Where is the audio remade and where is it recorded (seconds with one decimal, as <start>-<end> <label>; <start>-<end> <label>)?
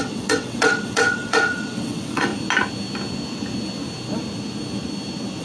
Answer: 0.0-2.3 remade; 2.3-5.4 recorded